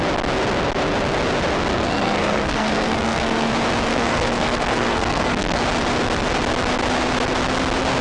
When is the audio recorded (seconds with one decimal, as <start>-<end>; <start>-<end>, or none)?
0.0-1.7; 3.5-3.9; 5.6-8.0